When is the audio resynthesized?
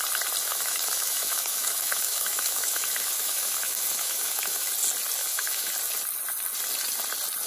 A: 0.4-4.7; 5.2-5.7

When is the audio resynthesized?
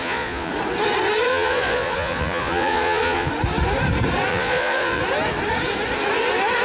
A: 0.0-0.5; 1.3-3.3; 4.3-5.0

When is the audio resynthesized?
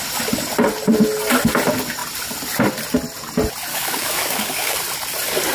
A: 3.7-4.8